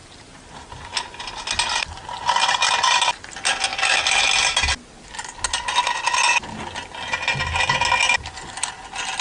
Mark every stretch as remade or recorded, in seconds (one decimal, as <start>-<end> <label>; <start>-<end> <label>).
0.0-1.3 remade; 1.3-9.2 recorded